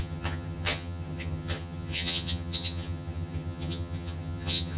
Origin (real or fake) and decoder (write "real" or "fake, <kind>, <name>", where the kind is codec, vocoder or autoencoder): fake, vocoder, HiFi-GAN